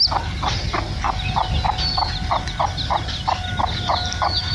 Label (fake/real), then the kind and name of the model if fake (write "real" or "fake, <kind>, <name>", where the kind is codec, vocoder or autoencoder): real